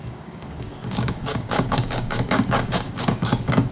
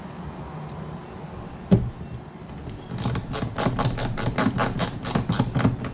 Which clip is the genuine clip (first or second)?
second